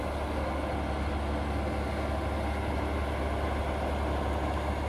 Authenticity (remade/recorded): recorded